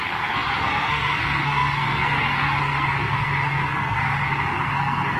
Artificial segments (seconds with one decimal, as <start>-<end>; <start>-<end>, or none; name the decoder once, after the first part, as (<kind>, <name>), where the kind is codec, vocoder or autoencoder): 0.0-5.2 (codec, SNAC)

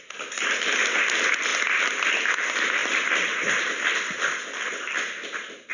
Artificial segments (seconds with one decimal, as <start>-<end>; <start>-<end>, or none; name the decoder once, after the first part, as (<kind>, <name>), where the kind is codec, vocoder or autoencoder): none

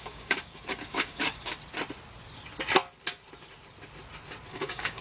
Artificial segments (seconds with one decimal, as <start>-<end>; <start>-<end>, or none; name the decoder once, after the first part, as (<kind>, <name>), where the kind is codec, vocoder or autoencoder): 0.0-1.5 (codec, DAC); 4.5-5.0

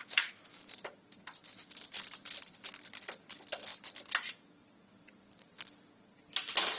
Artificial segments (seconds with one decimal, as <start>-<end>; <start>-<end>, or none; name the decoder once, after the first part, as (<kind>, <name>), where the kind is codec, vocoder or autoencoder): 0.0-0.6 (autoencoder, DAC-VAE)